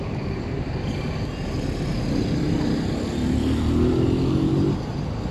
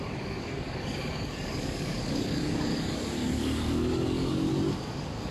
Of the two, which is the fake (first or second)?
second